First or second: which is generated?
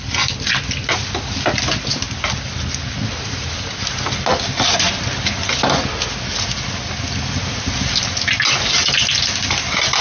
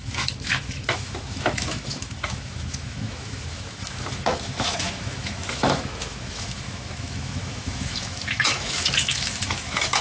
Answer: second